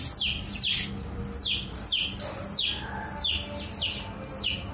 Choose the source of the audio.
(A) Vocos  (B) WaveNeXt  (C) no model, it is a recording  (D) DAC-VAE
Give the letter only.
C